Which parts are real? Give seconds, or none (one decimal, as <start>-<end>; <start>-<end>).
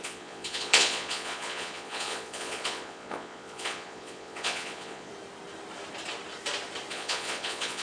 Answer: 5.1-6.9